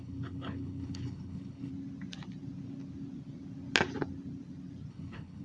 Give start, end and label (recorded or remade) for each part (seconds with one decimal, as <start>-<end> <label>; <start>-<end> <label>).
0.0-1.7 remade; 1.7-4.9 recorded; 4.9-5.4 remade